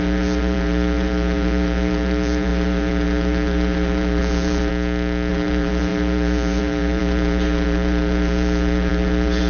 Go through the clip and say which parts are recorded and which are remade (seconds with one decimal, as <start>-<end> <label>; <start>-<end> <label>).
0.0-4.7 remade; 4.7-5.3 recorded; 5.3-9.5 remade